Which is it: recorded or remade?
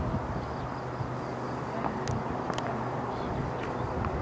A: recorded